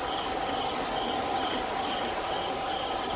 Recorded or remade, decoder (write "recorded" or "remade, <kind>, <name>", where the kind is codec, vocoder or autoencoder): recorded